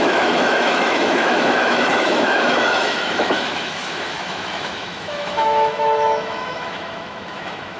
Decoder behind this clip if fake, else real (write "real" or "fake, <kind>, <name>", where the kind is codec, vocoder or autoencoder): fake, autoencoder, DAC-VAE